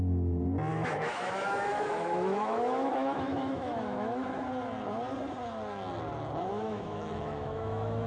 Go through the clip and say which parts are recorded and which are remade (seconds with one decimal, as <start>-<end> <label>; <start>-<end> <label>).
0.0-0.7 recorded; 0.7-4.4 remade; 4.4-6.5 recorded; 6.5-8.1 remade